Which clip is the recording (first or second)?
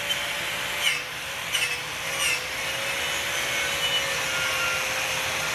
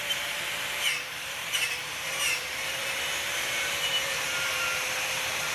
first